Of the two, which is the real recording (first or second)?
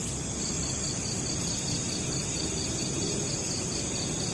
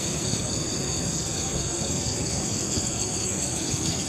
first